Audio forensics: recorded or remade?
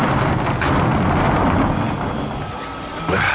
recorded